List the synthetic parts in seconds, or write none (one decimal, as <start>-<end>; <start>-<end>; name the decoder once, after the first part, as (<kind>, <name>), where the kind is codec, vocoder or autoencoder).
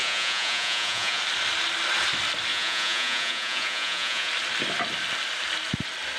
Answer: 0.0-1.2 (vocoder, Vocos); 2.5-4.3